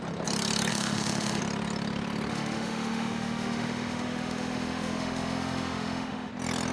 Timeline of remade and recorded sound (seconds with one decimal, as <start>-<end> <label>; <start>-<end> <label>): 0.0-0.7 recorded; 0.7-1.4 remade; 1.4-2.3 recorded; 2.3-6.3 remade; 6.3-6.7 recorded